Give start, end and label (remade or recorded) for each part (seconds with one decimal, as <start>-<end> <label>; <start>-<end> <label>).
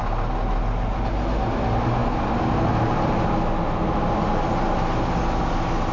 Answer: 0.0-5.9 recorded